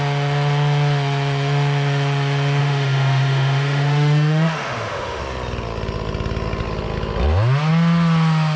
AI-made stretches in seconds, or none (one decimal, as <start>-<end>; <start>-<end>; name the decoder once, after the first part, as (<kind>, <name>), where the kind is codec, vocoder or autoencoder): 2.6-5.2 (autoencoder, DAC-VAE)